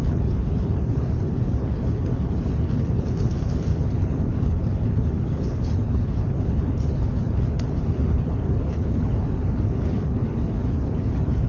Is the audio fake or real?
fake